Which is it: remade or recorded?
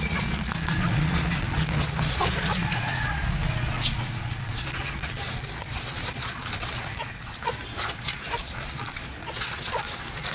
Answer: remade